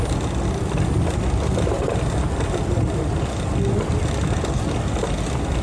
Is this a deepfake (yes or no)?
no